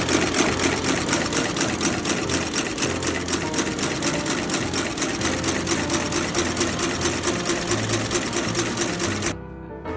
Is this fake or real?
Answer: real